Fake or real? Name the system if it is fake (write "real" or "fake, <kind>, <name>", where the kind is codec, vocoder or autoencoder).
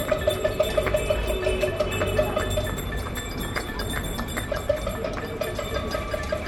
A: fake, vocoder, BigVGAN v2